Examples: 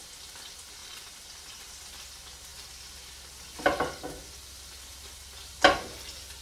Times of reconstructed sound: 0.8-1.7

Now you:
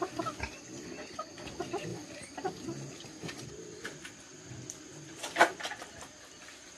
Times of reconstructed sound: none

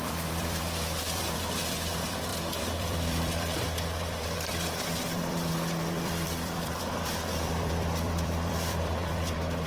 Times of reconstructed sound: 0.0-9.7

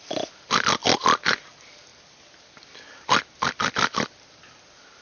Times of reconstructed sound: 1.9-3.6

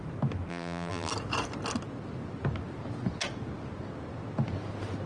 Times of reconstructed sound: 0.5-1.1

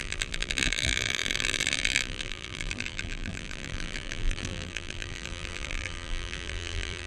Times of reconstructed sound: 0.0-7.1